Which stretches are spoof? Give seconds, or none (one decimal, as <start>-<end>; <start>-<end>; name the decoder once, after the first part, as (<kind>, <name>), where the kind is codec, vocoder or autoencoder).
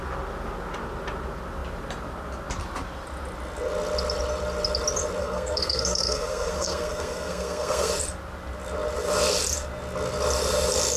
5.2-7.9 (codec, SNAC)